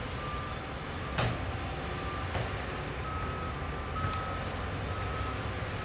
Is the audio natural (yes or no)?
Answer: yes